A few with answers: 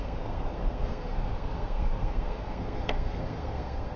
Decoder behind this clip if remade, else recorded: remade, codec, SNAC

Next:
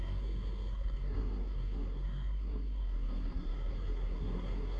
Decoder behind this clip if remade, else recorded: remade, codec, SNAC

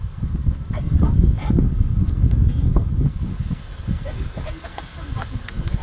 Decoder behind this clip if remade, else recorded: remade, codec, SNAC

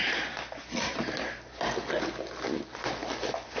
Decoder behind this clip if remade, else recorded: recorded